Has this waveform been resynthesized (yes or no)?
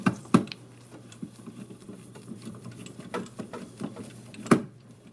yes